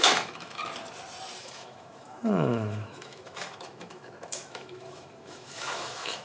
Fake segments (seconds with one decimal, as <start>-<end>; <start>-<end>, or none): 0.0-0.6; 1.4-6.2